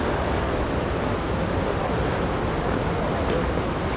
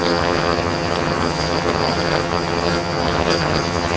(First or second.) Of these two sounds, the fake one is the second